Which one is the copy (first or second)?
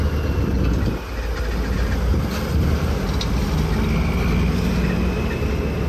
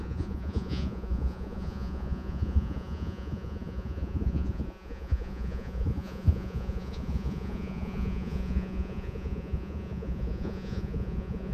second